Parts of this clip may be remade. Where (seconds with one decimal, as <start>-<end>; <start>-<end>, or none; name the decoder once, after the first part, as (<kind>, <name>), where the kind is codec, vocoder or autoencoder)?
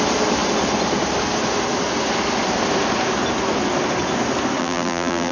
4.6-5.3 (vocoder, BigVGAN v2)